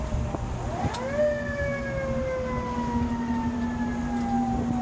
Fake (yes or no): no